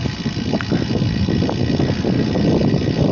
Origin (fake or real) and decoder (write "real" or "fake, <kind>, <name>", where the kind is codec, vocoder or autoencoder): real